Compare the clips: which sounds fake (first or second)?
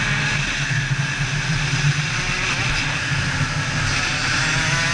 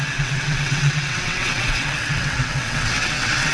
second